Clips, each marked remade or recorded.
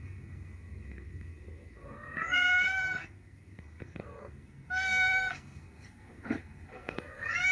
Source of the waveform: remade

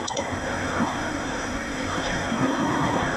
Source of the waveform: remade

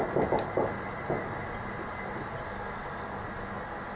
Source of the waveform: recorded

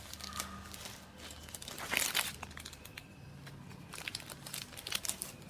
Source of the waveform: recorded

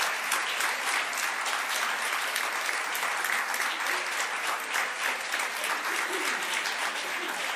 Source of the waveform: recorded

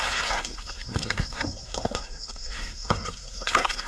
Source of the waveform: remade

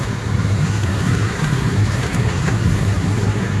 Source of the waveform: remade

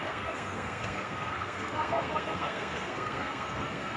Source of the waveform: remade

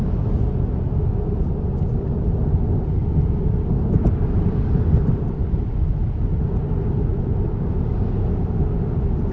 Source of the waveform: recorded